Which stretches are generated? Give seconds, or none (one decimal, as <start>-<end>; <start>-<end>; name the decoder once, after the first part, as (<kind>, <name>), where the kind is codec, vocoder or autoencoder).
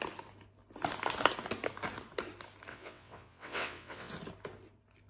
2.7-4.1 (vocoder, WaveNeXt)